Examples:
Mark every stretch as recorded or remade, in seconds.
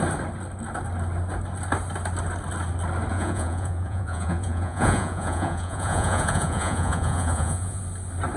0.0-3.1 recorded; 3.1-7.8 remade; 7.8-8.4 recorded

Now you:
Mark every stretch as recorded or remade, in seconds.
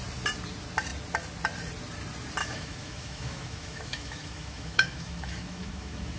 0.0-2.4 recorded; 2.4-6.2 remade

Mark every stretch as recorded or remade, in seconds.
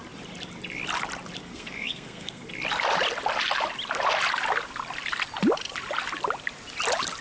0.0-1.4 recorded; 1.4-2.5 remade; 2.5-7.2 recorded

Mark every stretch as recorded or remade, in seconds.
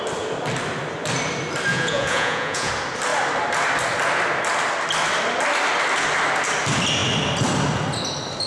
0.0-1.7 recorded; 1.7-2.7 remade; 2.7-8.5 recorded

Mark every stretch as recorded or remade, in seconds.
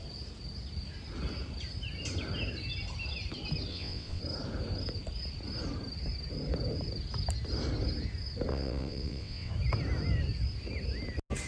0.0-3.7 recorded; 3.7-4.2 remade; 4.2-8.5 recorded; 8.5-9.5 remade; 9.5-11.5 recorded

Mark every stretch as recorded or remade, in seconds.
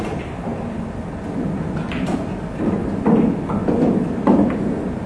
0.0-5.1 recorded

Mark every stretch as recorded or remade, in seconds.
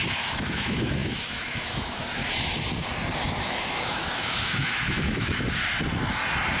0.0-2.2 remade; 2.2-3.4 recorded; 3.4-5.6 remade; 5.6-6.6 recorded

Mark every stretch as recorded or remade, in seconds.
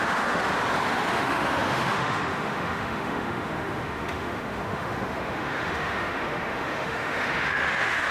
0.0-0.5 remade; 0.5-1.1 recorded; 1.1-8.1 remade